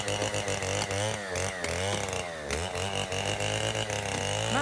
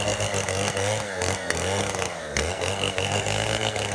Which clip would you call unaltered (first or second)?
first